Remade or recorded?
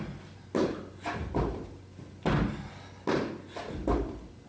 recorded